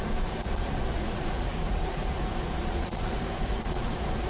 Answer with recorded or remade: remade